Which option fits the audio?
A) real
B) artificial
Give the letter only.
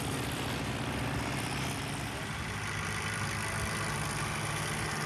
A